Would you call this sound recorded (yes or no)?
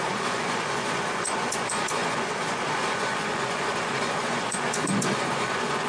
no